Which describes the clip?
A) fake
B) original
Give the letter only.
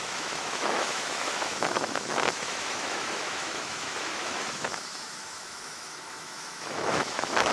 A